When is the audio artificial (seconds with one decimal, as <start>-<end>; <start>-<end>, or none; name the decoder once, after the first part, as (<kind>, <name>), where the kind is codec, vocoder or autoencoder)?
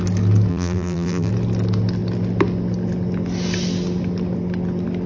0.5-1.3 (vocoder, BigVGAN v2)